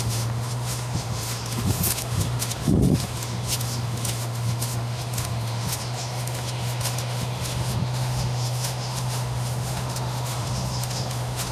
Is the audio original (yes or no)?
no